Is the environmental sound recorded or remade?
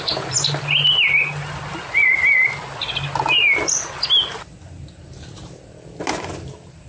recorded